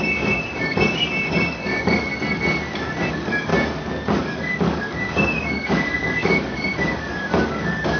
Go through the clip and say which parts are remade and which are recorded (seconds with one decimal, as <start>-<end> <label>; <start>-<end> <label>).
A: 0.0-2.1 remade; 2.1-3.1 recorded; 3.1-3.5 remade; 3.5-4.2 recorded; 4.2-8.0 remade